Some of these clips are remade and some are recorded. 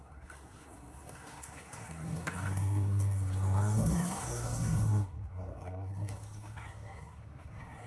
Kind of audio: remade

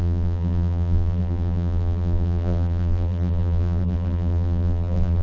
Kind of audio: remade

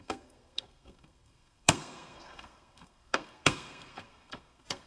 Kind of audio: remade